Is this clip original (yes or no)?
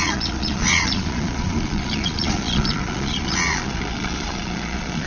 no